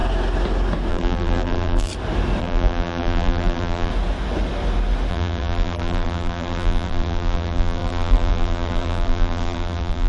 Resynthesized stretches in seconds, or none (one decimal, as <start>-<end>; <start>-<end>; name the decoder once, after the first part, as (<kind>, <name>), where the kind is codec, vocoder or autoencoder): 0.9-1.9 (vocoder, BigVGAN v2); 2.4-3.9; 5.1-10.1